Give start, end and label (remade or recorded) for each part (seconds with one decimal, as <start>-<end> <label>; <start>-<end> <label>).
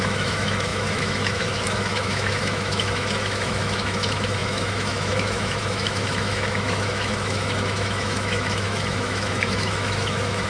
0.0-10.5 remade